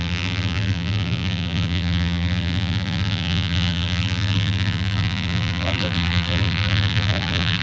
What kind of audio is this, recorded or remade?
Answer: remade